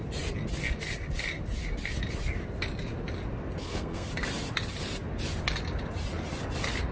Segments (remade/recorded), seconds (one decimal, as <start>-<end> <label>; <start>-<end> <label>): 0.0-3.6 recorded; 3.6-4.1 remade; 4.1-6.9 recorded